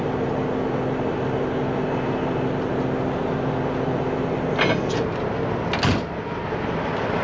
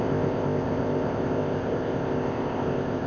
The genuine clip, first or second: first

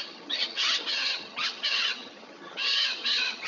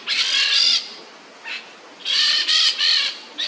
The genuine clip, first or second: second